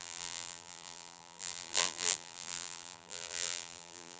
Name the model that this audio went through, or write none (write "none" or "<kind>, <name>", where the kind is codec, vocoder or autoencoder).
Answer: vocoder, BigVGAN v2